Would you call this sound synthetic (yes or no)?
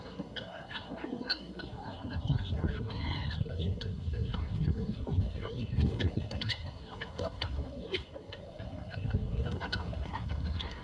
yes